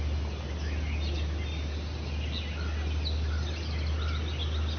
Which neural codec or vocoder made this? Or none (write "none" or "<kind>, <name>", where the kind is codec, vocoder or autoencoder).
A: none